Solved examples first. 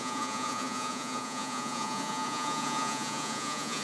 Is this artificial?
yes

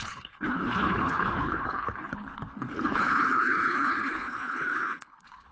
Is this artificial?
yes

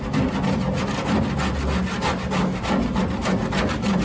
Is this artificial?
no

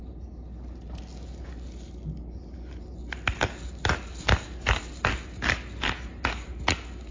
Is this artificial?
no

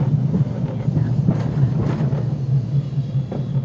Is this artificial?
no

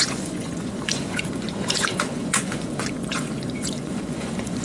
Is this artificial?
yes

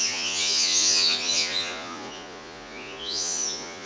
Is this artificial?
yes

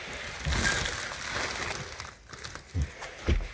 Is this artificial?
no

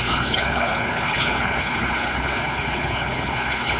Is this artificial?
yes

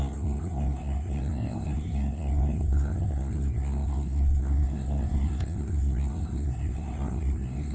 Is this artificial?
yes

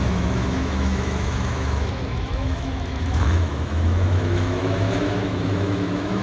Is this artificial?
yes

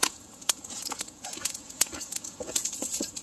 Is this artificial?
yes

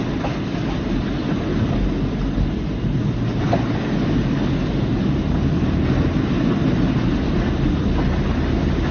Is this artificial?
no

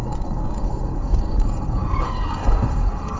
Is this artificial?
yes